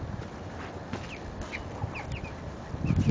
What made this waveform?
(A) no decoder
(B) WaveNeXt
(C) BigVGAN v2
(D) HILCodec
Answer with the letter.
A